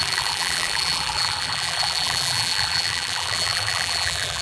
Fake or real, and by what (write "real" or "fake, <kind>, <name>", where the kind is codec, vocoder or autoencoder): fake, vocoder, BigVGAN v2